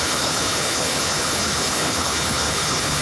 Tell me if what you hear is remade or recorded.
remade